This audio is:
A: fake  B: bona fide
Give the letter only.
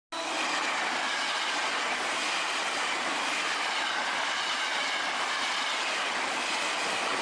B